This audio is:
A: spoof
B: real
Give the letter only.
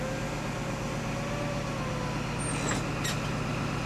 B